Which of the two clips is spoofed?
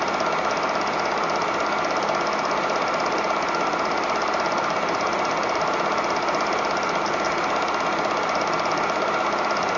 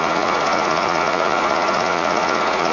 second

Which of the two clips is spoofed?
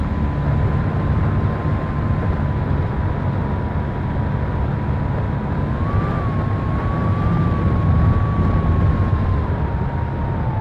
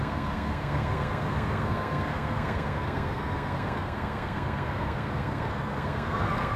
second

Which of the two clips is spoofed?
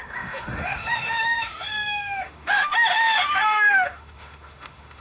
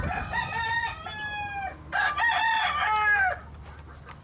first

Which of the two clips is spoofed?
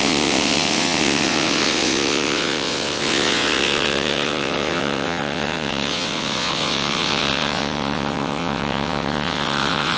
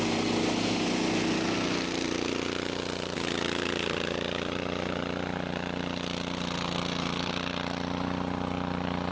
first